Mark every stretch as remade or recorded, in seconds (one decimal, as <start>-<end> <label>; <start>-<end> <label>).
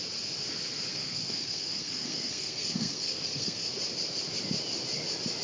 0.0-0.9 recorded; 0.9-3.7 remade; 3.7-5.4 recorded